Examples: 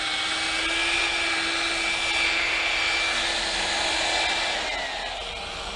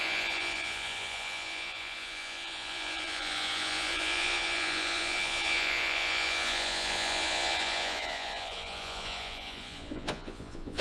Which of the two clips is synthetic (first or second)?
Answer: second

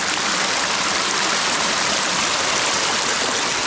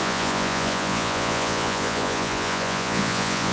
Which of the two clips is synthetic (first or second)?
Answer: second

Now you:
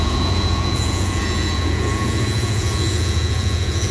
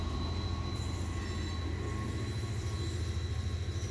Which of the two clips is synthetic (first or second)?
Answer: first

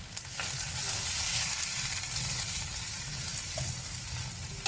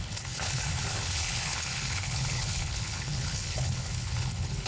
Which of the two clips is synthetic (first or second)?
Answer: second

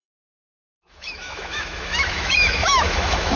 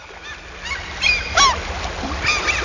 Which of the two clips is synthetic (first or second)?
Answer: first